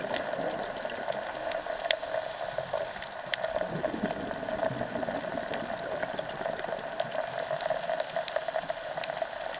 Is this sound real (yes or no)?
yes